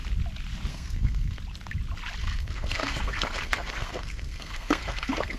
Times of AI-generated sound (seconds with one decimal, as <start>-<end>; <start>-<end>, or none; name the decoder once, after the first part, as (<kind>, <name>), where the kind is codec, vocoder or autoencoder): 0.7-1.4 (codec, SNAC); 2.2-5.4